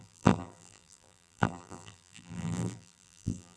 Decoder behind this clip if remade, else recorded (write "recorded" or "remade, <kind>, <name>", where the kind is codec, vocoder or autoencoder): remade, vocoder, BigVGAN v2